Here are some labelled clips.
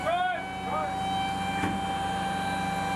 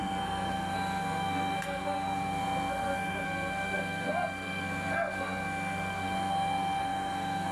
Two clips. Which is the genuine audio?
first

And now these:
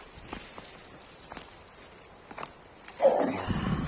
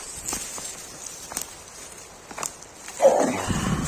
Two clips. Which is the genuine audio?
second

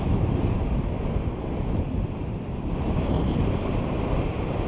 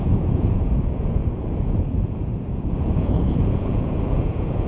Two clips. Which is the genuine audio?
first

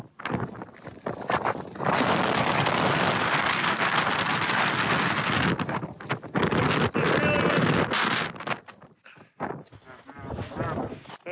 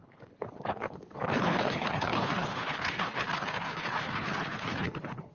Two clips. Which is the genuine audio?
first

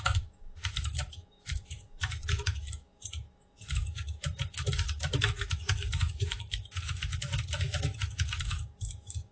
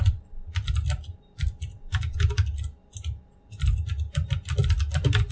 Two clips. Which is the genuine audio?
second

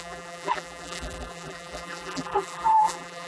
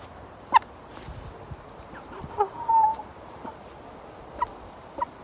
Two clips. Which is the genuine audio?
second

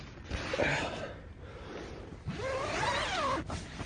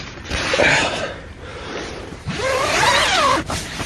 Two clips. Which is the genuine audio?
first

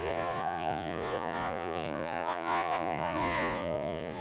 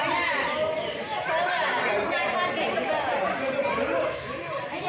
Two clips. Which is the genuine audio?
second